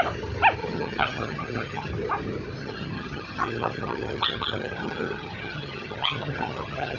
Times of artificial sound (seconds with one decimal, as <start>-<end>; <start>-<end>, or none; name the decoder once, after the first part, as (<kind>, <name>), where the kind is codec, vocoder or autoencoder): 0.6-1.9 (vocoder, HiFi-GAN); 2.6-7.0